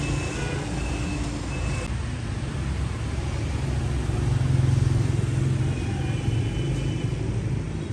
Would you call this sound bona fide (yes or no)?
yes